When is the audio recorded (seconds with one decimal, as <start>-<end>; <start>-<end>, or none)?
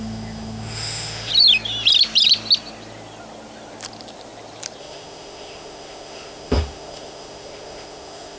1.3-4.8